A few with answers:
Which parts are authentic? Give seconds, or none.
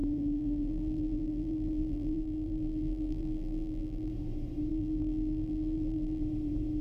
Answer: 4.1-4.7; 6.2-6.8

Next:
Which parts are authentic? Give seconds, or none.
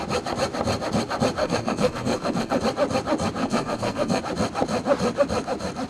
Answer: 0.0-1.4; 2.6-3.4; 4.2-5.9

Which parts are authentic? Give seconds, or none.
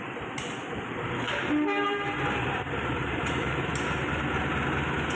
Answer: 0.0-0.6; 3.7-5.2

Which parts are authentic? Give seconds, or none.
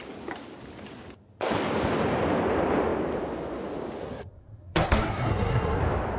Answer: 0.0-4.0; 5.8-6.2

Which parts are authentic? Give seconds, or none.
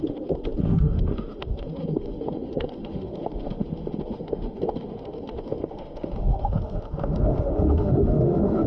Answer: none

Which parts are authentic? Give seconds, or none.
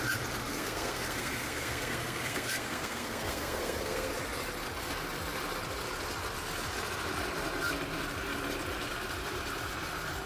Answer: 0.0-0.5; 4.1-10.3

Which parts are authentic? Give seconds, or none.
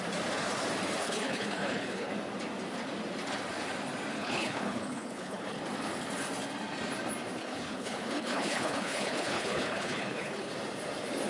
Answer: 0.0-1.0; 2.1-4.1; 5.6-7.4; 10.5-11.3